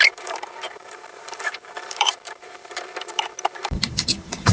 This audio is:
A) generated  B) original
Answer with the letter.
A